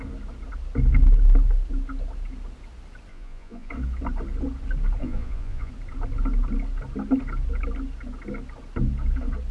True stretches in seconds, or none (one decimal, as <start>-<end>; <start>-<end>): 0.0-3.1; 3.7-5.0; 5.7-9.5